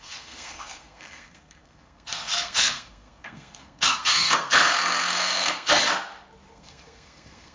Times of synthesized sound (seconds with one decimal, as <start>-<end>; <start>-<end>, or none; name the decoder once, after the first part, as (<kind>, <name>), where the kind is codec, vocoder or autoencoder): 0.0-5.7 (codec, SNAC); 6.5-7.5